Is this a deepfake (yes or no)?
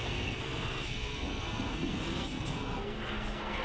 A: yes